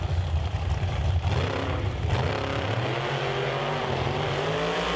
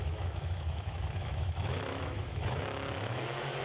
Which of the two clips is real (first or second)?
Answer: first